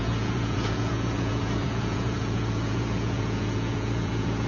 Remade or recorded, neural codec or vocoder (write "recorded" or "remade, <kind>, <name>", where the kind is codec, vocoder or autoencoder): remade, vocoder, Vocos